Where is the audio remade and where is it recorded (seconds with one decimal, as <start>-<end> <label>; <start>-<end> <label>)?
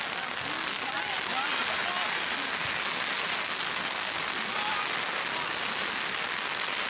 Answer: 0.0-6.9 recorded